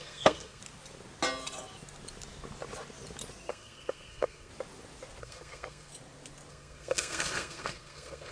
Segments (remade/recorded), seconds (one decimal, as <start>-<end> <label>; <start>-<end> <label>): 0.0-0.6 remade; 0.6-3.5 recorded; 3.5-4.5 remade; 4.5-5.2 recorded; 5.2-5.9 remade; 5.9-6.5 recorded; 6.5-8.3 remade